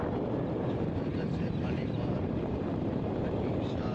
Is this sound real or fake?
fake